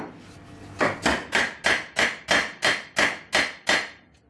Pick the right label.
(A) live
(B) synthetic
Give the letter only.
A